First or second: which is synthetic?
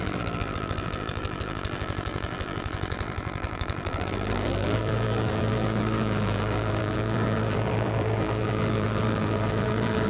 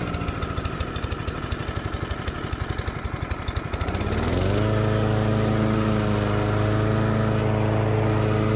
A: first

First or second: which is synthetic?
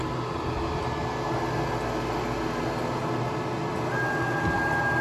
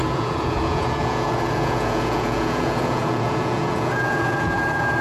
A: second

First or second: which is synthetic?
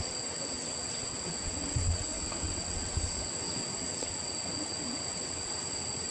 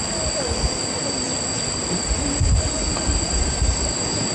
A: first